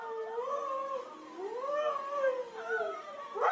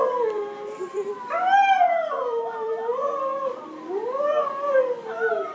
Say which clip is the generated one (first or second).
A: second